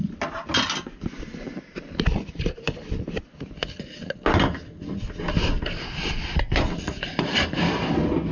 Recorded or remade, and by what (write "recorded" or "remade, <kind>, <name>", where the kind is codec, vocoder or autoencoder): recorded